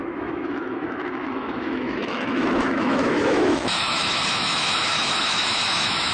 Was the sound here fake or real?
fake